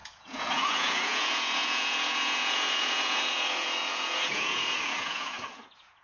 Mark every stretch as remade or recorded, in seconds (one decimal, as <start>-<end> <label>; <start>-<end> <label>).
0.0-6.0 remade